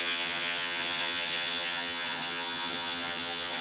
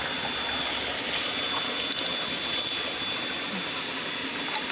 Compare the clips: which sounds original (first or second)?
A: second